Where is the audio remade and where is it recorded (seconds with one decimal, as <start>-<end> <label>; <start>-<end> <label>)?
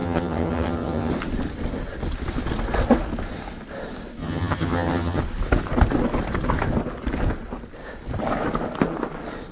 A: 0.0-1.1 remade; 1.1-4.2 recorded; 4.2-5.2 remade; 5.2-9.5 recorded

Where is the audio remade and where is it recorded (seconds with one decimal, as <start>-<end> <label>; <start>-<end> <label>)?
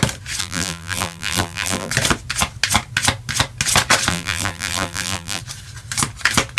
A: 0.0-0.4 recorded; 0.4-1.9 remade; 1.9-4.1 recorded; 4.1-5.4 remade; 5.4-6.6 recorded